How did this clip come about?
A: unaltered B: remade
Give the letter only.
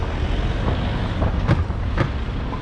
A